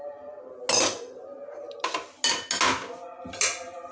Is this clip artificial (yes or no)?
no